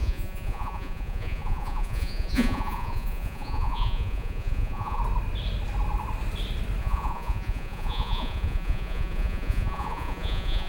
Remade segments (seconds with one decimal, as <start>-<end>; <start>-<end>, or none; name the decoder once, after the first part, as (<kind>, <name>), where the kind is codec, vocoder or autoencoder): 0.0-5.0 (vocoder, Vocos); 6.8-10.7